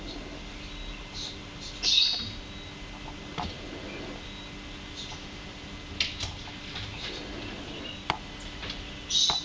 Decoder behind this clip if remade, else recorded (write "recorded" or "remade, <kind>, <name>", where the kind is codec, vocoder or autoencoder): recorded